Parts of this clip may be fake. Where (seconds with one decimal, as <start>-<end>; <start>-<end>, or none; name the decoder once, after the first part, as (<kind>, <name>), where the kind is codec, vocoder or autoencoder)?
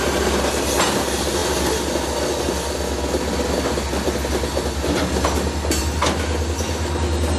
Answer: none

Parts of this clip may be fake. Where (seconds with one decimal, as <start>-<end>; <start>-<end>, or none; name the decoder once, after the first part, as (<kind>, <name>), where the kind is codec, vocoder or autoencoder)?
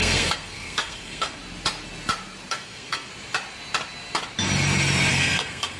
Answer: 0.0-1.4 (codec, SNAC); 2.5-3.1; 5.1-5.8